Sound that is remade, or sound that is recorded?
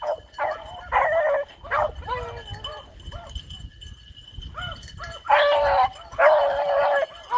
recorded